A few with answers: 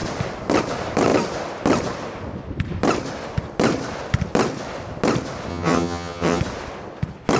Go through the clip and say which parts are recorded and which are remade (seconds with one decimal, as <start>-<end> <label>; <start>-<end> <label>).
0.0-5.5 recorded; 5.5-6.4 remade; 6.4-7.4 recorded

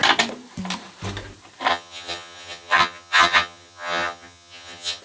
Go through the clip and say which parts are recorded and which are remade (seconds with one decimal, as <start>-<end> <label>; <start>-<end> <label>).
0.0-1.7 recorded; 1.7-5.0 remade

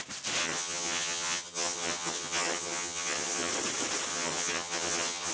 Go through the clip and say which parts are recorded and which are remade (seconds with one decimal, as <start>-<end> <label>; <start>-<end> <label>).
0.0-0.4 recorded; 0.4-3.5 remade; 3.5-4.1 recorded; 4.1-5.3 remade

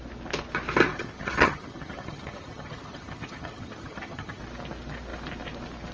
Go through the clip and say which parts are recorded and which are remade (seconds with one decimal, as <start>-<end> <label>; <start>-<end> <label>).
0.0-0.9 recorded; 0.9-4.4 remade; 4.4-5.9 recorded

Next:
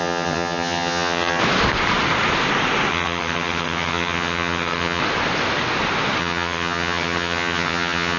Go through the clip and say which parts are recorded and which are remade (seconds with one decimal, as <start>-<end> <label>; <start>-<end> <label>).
0.0-1.4 remade; 1.4-2.9 recorded; 2.9-5.0 remade; 5.0-6.2 recorded; 6.2-8.2 remade